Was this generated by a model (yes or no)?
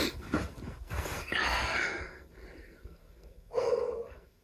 yes